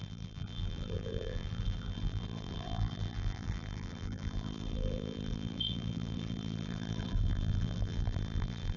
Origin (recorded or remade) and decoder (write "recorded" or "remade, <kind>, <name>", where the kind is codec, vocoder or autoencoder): remade, vocoder, BigVGAN v2